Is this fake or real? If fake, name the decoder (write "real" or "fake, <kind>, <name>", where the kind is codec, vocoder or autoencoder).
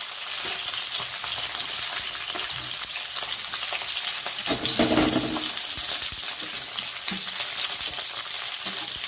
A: real